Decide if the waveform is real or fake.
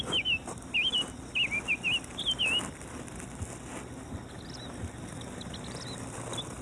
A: real